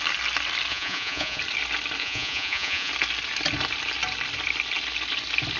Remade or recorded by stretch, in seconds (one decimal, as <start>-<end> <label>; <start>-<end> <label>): 0.0-0.7 recorded; 0.7-1.4 remade; 1.4-2.0 recorded; 2.0-2.9 remade; 2.9-5.6 recorded